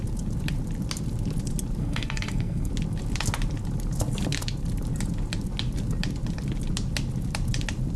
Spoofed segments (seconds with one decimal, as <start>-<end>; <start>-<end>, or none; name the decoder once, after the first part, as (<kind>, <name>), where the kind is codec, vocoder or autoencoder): 1.8-2.7 (codec, SNAC)